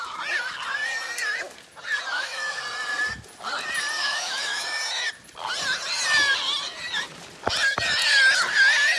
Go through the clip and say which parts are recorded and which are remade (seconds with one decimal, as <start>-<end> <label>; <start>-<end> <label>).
0.0-2.1 recorded; 2.1-2.6 remade; 2.6-4.0 recorded; 4.0-4.8 remade; 4.8-9.0 recorded